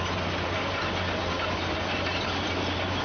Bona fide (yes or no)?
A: yes